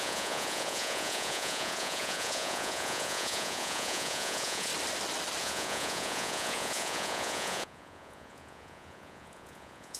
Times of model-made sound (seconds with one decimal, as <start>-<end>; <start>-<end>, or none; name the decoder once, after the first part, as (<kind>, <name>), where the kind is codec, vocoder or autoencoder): 0.0-4.7 (vocoder, Vocos); 5.4-10.0